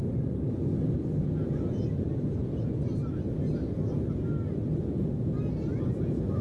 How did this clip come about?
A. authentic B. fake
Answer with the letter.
A